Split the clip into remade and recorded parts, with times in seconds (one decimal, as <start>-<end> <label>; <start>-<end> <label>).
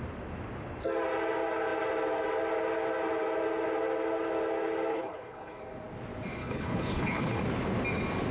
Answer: 0.0-4.9 recorded; 4.9-5.6 remade; 5.6-6.4 recorded; 6.4-7.4 remade; 7.4-8.3 recorded